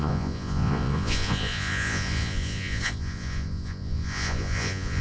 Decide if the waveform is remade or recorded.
remade